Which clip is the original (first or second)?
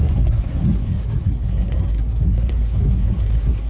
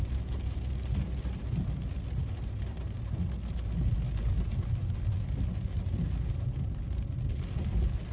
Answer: second